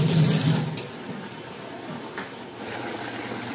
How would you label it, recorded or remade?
recorded